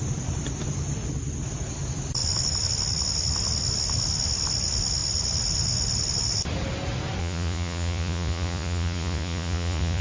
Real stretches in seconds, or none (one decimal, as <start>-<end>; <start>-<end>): 0.0-7.2